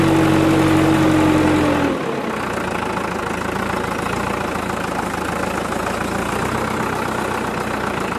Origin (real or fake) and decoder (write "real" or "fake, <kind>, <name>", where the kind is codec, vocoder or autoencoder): real